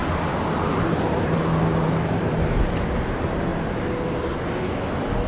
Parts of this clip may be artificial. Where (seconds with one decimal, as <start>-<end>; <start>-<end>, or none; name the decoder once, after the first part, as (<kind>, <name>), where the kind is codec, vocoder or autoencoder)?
0.8-3.5 (vocoder, BigVGAN v2)